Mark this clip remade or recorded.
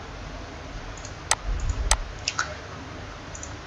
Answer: recorded